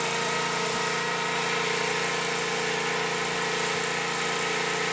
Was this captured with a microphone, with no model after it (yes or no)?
yes